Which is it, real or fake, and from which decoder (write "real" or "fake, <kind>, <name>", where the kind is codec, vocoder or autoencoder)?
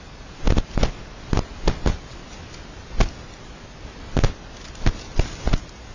real